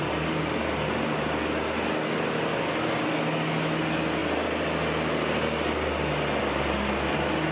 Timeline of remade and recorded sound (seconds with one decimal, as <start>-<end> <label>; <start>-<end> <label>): 0.0-7.5 recorded